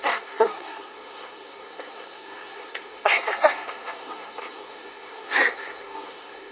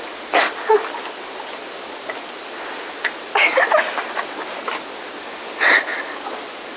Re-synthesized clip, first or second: first